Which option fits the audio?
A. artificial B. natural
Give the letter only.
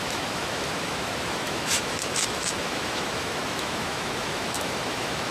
A